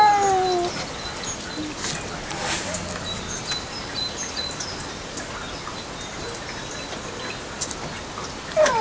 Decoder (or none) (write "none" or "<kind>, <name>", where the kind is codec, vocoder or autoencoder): none